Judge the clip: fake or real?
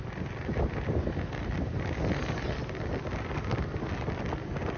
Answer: real